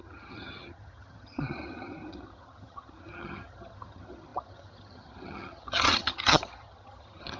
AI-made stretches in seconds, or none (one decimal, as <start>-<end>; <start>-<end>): 0.0-7.4